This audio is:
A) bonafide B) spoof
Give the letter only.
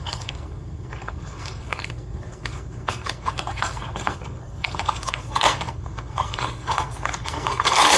B